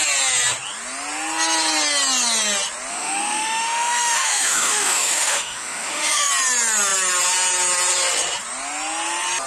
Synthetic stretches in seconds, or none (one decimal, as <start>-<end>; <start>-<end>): 2.9-6.3